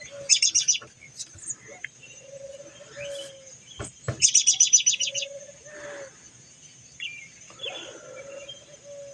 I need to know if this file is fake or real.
real